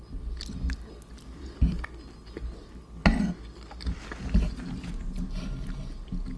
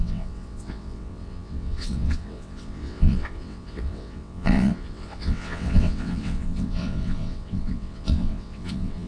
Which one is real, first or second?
first